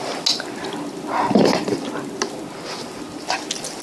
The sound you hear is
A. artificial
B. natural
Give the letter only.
B